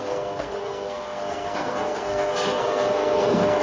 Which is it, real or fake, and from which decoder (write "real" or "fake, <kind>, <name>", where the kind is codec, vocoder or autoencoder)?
fake, codec, SNAC